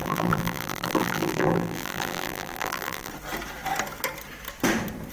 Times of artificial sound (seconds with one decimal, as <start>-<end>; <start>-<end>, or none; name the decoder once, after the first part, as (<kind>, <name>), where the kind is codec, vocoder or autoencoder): 0.0-3.1 (vocoder, BigVGAN v2)